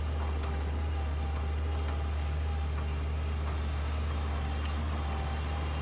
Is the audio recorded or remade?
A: recorded